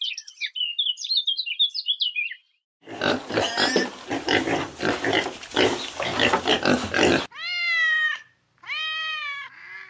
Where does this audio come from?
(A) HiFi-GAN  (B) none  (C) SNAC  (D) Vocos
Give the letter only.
B